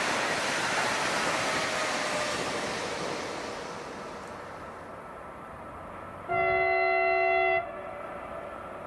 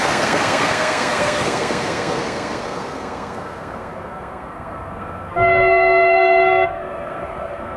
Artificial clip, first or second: second